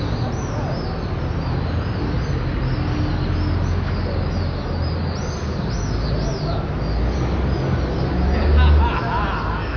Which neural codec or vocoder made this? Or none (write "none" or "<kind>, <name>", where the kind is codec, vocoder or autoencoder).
none